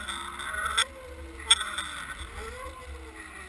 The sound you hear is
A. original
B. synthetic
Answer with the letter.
A